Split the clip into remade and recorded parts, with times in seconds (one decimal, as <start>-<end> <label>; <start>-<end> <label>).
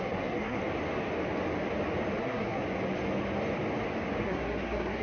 0.0-0.6 remade; 0.6-2.2 recorded; 2.2-2.6 remade; 2.6-4.2 recorded; 4.2-5.0 remade